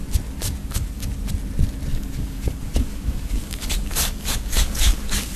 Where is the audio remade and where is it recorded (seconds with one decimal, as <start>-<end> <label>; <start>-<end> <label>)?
0.0-0.6 recorded; 0.6-1.1 remade; 1.1-1.9 recorded; 1.9-5.4 remade

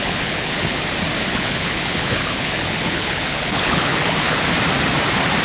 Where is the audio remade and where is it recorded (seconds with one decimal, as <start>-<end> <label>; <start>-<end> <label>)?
0.0-0.8 remade; 0.8-1.3 recorded; 1.3-4.5 remade; 4.5-5.4 recorded

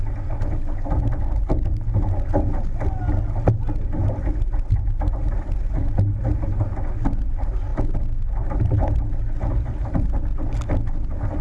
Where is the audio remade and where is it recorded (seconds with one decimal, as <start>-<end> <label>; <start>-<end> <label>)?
0.0-11.4 recorded

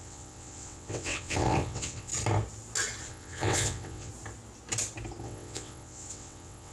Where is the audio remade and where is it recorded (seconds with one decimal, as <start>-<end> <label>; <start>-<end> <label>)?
0.0-2.1 remade; 2.1-3.1 recorded; 3.1-4.1 remade; 4.1-5.2 recorded; 5.2-6.7 remade